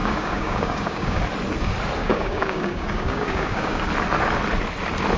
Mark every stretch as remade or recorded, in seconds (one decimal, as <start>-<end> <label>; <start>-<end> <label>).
0.0-1.2 remade; 1.2-2.0 recorded; 2.0-3.9 remade; 3.9-5.2 recorded